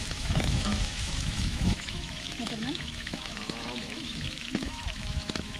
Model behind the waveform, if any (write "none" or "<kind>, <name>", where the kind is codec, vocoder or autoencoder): autoencoder, DAC-VAE